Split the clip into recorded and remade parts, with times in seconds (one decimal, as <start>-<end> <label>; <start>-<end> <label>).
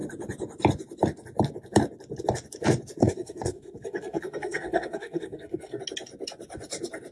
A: 0.0-3.0 recorded; 3.0-5.8 remade; 5.8-7.1 recorded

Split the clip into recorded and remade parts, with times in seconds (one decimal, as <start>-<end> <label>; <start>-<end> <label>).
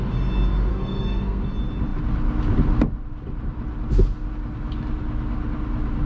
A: 0.0-0.7 recorded; 0.7-1.4 remade; 1.4-6.1 recorded